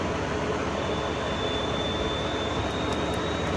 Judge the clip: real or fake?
real